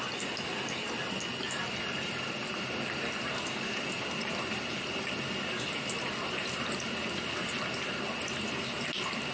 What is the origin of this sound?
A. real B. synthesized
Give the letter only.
A